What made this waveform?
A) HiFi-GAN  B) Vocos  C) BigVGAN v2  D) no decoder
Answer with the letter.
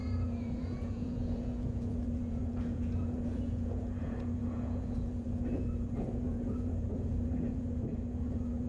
B